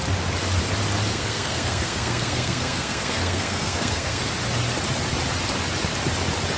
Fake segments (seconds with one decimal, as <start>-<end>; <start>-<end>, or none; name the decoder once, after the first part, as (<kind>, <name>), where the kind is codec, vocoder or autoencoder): 1.1-4.2 (codec, SNAC)